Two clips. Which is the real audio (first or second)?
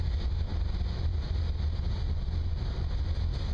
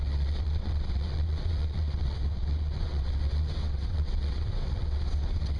first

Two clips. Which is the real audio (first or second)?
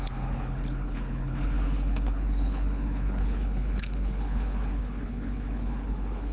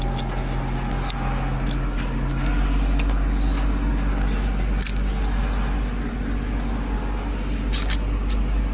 second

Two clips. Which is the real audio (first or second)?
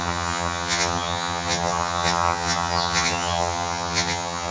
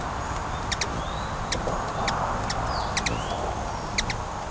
second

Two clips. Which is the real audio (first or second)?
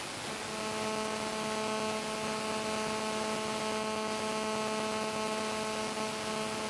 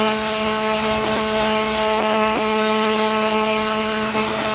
first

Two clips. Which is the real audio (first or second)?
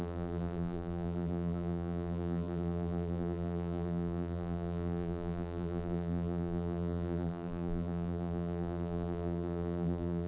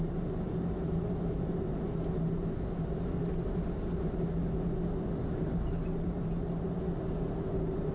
second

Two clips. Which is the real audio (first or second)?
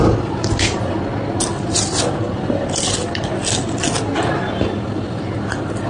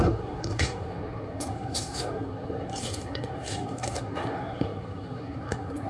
first